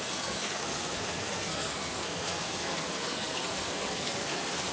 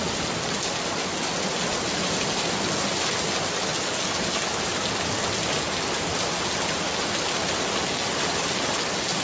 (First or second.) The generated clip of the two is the first